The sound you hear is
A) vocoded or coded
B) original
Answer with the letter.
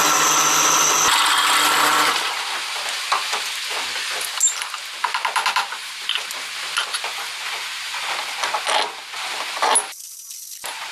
B